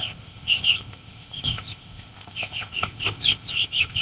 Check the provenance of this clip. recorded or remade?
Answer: remade